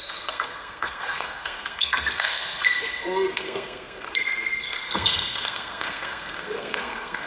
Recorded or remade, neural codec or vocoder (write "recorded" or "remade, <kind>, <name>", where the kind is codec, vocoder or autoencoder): remade, codec, SNAC